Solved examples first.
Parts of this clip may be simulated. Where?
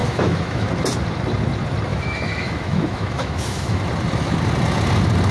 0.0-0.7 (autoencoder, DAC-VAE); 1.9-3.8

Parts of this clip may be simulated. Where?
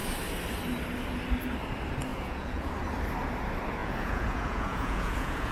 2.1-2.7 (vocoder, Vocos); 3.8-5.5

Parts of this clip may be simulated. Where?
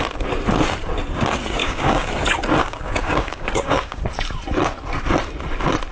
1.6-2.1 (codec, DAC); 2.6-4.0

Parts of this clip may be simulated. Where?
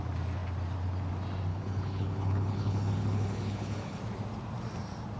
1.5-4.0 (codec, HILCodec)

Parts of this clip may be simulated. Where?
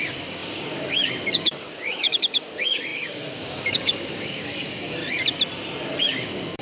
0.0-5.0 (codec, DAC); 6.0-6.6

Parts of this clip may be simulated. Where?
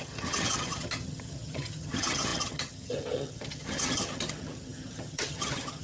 0.0-5.8 (vocoder, HiFi-GAN)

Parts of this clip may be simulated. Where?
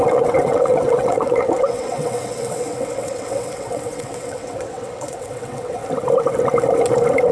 0.0-5.8 (vocoder, WaveNeXt)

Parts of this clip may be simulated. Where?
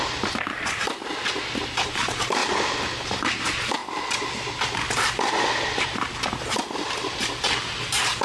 0.0-1.1 (vocoder, BigVGAN v2); 2.0-3.8; 5.3-8.2